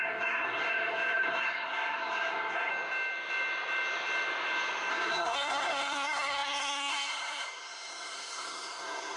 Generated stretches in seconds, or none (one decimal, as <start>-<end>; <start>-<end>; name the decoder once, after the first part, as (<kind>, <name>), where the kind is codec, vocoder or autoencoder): 0.0-2.7 (codec, SNAC); 4.9-9.2

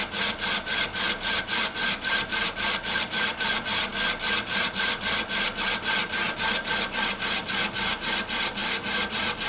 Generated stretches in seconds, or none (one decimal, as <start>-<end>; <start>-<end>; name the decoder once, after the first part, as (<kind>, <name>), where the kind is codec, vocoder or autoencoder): none